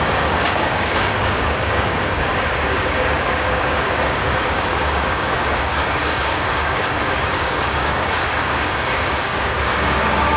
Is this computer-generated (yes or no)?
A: yes